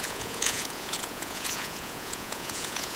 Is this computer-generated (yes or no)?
yes